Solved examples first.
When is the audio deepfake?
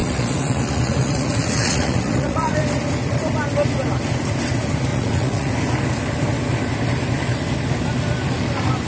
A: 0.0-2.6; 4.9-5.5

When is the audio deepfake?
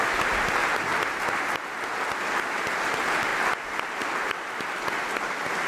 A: none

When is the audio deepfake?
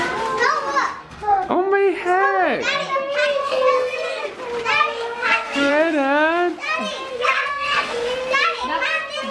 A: 1.0-1.5; 3.4-4.3; 4.8-5.7; 7.1-8.1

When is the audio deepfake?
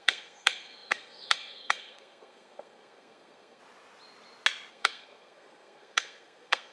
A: 0.0-3.6; 4.7-6.7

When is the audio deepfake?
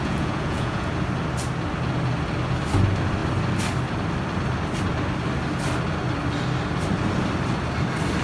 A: 0.0-0.9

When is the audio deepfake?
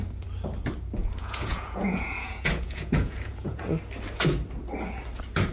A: 1.0-3.6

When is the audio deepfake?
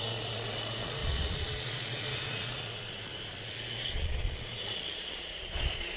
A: 0.0-6.0